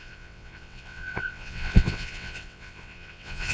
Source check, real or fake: fake